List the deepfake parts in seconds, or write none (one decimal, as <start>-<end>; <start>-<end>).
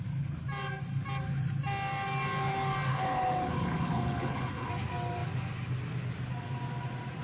2.9-4.7